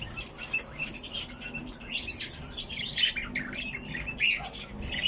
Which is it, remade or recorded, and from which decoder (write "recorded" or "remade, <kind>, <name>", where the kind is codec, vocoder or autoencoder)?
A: recorded